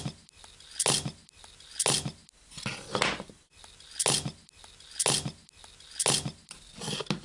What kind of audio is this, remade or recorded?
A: recorded